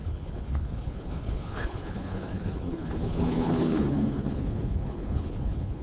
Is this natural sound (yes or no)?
no